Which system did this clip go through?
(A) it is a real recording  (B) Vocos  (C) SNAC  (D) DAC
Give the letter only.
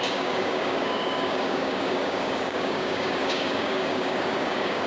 D